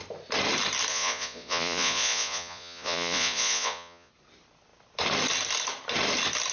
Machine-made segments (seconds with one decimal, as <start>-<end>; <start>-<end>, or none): 0.9-4.1